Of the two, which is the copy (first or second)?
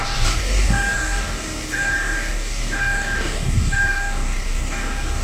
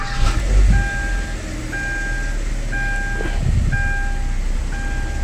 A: first